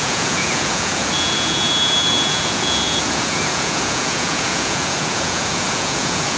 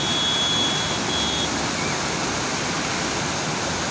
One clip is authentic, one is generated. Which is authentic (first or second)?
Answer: second